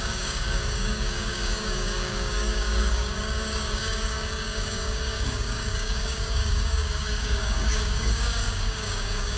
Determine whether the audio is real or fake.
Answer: fake